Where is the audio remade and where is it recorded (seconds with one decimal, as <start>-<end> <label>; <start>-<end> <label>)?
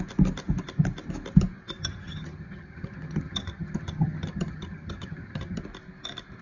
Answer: 0.0-1.8 recorded; 1.8-5.6 remade; 5.6-6.4 recorded